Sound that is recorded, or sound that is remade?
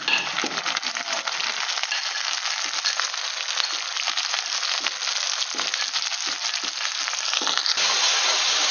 recorded